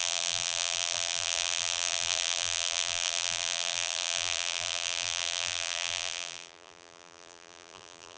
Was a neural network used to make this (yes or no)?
yes